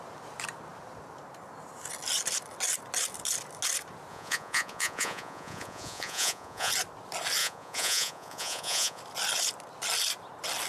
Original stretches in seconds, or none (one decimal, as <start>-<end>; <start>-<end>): 0.0-4.1; 6.7-7.4; 9.0-10.7